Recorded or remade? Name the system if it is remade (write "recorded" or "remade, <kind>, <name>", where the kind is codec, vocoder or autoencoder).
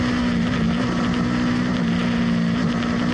recorded